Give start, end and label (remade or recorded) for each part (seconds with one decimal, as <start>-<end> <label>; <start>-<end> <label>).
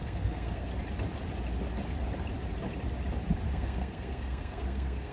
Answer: 0.0-0.7 remade; 0.7-3.5 recorded; 3.5-5.1 remade